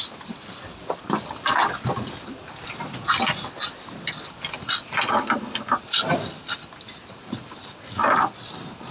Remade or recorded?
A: recorded